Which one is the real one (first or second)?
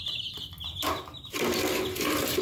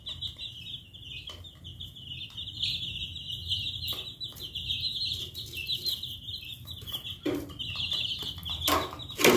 second